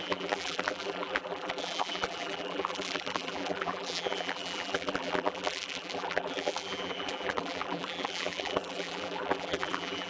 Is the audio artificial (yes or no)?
yes